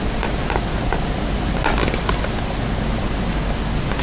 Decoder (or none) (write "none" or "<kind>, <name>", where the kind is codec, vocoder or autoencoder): none